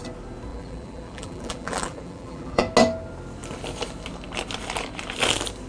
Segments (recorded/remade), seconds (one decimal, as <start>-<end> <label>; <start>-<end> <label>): 0.0-0.5 recorded; 0.5-2.6 remade; 2.6-5.7 recorded